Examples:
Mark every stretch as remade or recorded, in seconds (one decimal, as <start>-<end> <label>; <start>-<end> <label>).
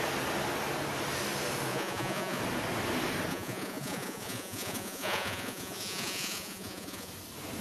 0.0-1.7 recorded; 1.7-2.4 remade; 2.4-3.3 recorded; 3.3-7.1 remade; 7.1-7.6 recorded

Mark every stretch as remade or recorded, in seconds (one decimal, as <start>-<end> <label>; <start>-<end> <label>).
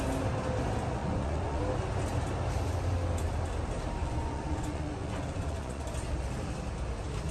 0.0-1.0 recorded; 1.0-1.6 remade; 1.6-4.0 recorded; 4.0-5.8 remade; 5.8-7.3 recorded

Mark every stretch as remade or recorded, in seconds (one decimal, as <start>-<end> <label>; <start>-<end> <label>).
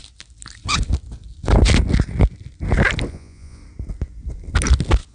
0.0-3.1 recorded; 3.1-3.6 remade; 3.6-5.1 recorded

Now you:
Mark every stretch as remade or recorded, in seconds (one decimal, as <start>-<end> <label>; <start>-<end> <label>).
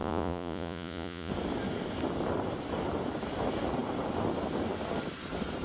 0.0-1.3 remade; 1.3-5.6 recorded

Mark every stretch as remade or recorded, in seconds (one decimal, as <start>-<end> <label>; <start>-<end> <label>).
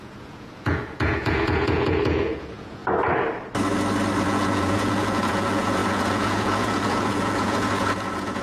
0.0-2.8 remade; 2.8-4.2 recorded; 4.2-8.4 remade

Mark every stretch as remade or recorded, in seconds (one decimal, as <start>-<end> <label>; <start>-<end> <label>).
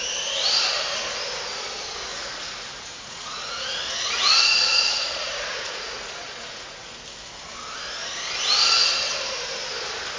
0.0-2.1 recorded; 2.1-6.9 remade; 6.9-10.2 recorded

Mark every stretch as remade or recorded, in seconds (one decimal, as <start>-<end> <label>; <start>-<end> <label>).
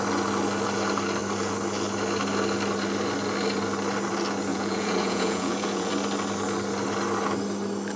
0.0-4.5 recorded; 4.5-5.9 remade; 5.9-8.0 recorded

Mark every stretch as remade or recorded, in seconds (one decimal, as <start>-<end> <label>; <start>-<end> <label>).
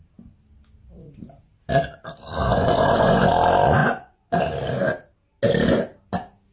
0.0-2.5 recorded; 2.5-3.3 remade; 3.3-3.8 recorded; 3.8-4.4 remade; 4.4-6.5 recorded